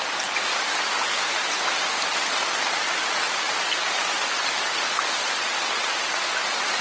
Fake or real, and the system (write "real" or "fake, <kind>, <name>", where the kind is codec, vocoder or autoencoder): real